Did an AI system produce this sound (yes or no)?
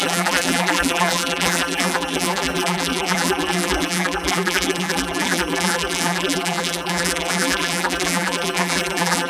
yes